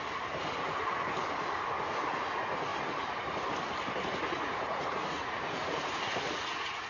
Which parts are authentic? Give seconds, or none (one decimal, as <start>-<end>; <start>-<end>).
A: 0.0-4.1